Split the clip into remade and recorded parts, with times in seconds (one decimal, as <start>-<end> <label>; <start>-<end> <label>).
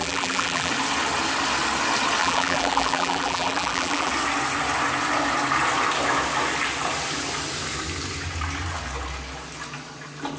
0.0-0.7 remade; 0.7-2.2 recorded; 2.2-4.1 remade; 4.1-10.4 recorded